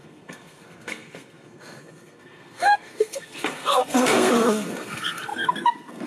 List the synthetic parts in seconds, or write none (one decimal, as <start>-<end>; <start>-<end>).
0.0-6.1